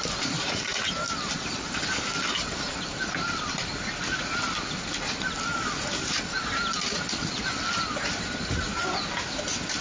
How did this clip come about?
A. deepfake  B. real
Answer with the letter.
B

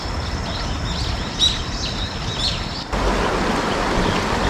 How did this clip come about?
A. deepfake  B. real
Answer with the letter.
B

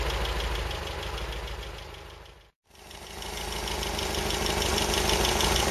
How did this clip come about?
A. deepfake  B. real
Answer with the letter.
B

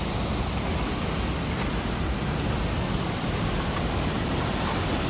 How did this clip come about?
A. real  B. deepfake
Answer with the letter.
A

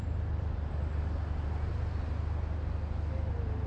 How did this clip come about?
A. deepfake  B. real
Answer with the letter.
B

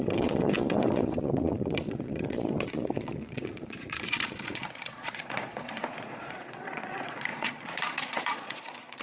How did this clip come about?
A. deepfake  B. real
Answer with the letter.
A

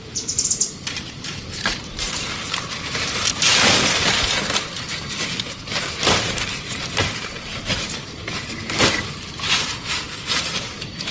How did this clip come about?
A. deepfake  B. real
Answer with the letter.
A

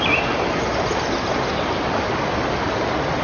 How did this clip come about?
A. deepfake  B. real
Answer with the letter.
B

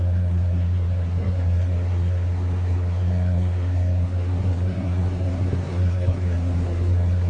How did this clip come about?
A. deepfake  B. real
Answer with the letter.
A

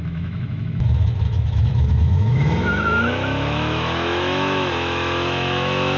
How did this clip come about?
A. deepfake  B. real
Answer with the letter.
A